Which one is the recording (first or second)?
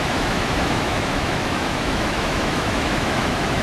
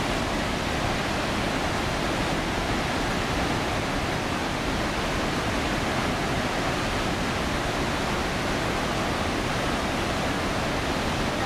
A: second